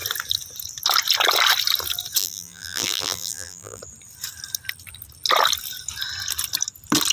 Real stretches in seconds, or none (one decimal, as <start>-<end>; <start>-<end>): 0.0-2.2; 3.8-7.1